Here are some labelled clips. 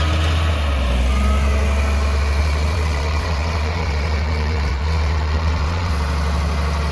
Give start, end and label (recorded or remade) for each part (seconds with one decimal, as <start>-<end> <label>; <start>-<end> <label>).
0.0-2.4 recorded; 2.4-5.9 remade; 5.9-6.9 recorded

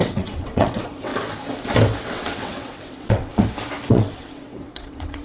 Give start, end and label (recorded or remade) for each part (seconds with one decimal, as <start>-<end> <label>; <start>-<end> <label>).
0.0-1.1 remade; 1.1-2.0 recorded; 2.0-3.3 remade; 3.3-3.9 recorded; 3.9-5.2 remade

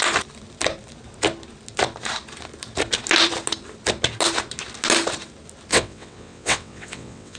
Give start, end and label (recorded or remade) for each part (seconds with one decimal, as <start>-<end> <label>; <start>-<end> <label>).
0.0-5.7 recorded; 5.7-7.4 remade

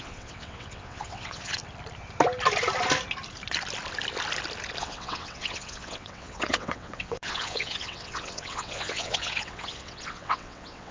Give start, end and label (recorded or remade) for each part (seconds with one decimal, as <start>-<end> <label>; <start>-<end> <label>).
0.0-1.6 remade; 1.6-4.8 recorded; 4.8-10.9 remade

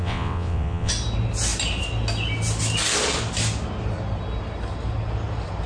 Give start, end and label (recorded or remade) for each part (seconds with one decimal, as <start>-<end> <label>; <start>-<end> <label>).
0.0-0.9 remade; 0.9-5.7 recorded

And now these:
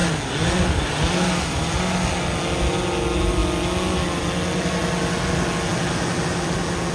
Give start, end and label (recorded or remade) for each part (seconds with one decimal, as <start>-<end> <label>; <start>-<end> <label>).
0.0-6.9 recorded